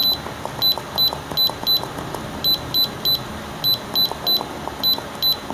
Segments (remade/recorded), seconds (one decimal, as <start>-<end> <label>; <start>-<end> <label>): 0.0-5.5 recorded